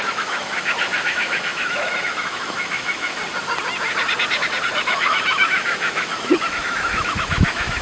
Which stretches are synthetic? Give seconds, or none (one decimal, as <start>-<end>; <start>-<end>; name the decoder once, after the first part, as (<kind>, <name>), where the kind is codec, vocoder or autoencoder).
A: 0.0-3.2 (autoencoder, DAC-VAE); 4.7-7.8